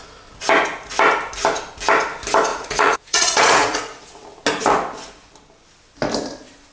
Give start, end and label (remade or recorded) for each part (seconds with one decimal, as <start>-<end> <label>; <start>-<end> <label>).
0.0-2.5 recorded; 2.5-4.1 remade; 4.1-6.7 recorded